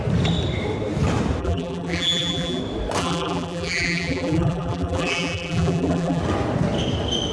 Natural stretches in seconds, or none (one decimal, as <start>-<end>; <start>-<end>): 0.0-1.4; 2.6-3.0; 6.2-7.3